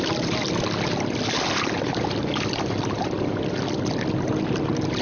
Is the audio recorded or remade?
recorded